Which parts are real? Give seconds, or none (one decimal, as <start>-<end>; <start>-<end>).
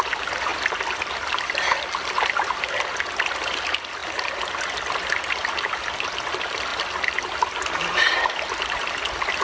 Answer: 0.0-9.4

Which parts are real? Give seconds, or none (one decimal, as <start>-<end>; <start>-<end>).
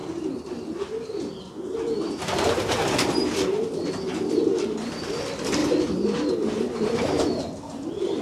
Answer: 0.0-8.2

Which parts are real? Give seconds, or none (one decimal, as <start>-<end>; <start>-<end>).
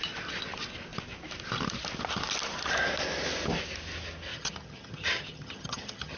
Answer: 0.0-4.3